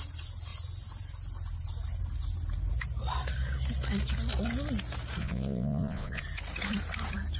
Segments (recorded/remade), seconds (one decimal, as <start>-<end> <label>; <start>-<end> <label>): 0.0-5.2 recorded; 5.2-6.2 remade; 6.2-7.4 recorded